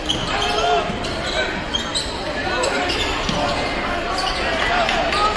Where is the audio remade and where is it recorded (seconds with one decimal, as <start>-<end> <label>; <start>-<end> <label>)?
0.0-5.4 recorded